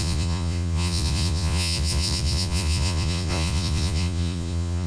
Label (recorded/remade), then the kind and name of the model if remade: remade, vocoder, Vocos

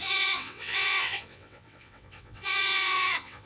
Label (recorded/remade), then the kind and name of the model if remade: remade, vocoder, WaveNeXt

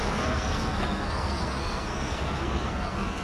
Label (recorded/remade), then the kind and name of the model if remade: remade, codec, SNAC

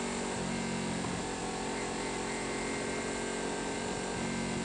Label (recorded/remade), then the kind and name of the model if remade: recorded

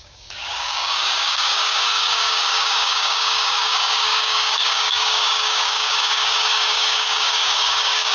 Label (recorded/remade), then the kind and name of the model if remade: remade, codec, DAC